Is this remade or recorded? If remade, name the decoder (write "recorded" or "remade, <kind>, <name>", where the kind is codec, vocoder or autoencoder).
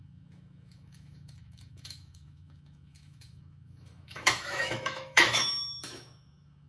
remade, autoencoder, DAC-VAE